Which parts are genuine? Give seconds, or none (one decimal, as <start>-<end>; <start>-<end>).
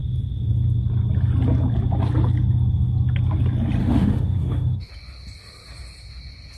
0.0-3.8; 4.9-6.6